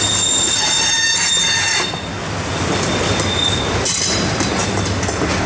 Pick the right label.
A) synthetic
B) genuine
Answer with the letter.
B